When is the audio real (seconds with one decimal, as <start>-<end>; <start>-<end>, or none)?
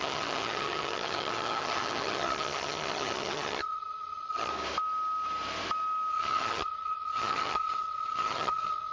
4.5-6.1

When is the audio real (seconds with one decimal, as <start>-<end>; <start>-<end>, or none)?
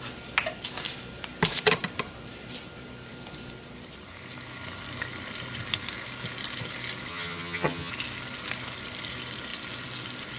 0.0-7.1; 7.9-10.4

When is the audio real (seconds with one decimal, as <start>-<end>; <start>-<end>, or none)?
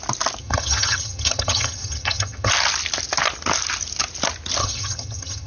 0.0-0.4; 2.5-4.6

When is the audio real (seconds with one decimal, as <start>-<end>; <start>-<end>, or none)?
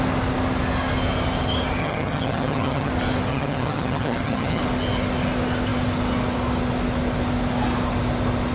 0.0-1.8; 2.9-3.3; 4.6-8.5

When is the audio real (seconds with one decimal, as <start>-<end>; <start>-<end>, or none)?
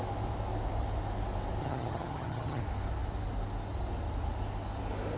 0.0-1.6; 2.6-5.2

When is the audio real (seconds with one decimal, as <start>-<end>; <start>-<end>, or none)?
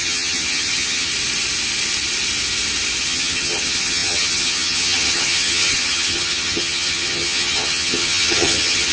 1.1-3.0